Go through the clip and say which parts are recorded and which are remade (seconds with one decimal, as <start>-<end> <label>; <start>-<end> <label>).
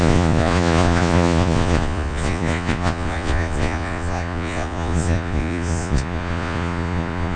0.0-7.4 remade